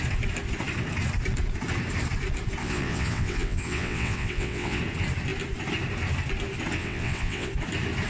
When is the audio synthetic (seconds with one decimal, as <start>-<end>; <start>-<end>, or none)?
2.6-4.8; 6.8-7.5